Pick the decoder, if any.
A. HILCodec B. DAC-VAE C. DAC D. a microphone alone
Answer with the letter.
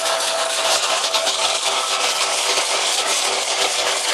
C